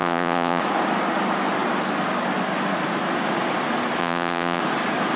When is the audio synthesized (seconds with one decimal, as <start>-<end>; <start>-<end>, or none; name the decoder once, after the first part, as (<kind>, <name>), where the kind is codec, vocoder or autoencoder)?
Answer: 0.0-0.6 (vocoder, Vocos); 4.0-4.6